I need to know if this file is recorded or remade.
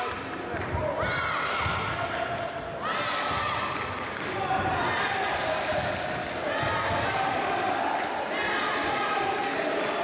recorded